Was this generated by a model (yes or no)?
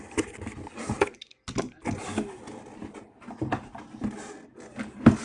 no